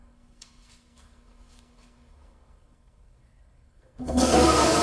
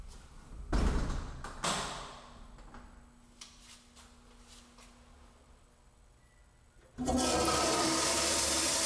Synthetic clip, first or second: first